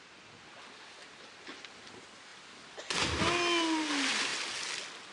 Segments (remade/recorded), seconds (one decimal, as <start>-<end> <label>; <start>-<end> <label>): 0.0-5.1 recorded